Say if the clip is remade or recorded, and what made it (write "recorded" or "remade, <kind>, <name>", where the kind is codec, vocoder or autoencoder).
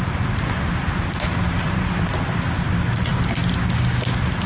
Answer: recorded